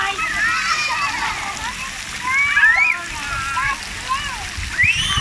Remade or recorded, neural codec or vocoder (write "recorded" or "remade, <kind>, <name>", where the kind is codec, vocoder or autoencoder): recorded